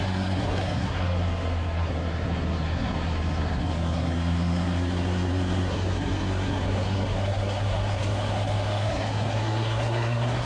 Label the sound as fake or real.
fake